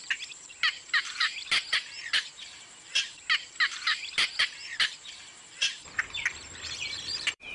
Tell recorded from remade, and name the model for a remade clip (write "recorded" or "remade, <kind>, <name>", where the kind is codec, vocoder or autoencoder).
remade, vocoder, BigVGAN v2